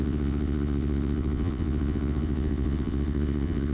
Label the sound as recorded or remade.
remade